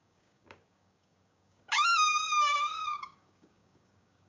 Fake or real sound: fake